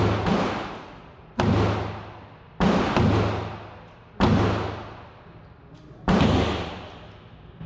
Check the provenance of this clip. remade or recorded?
recorded